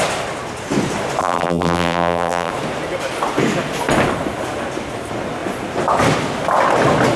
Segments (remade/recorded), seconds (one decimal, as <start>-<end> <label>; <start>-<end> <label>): 0.0-1.2 recorded; 1.2-2.5 remade; 2.5-7.2 recorded